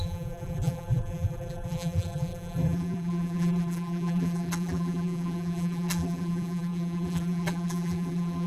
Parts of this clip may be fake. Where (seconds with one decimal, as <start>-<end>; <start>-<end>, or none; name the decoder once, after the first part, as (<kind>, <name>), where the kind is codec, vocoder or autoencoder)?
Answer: 0.0-8.5 (vocoder, BigVGAN v2)